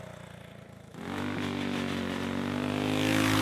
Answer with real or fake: real